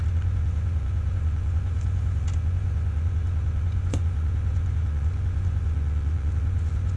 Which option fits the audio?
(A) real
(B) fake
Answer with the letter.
B